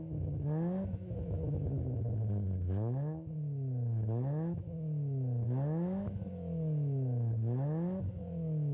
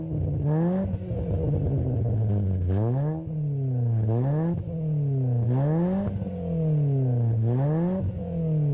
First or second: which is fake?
first